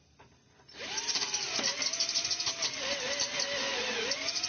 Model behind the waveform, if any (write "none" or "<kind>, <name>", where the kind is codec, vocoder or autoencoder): none